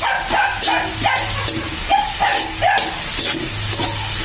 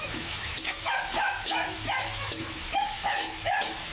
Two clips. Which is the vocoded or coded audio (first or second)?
second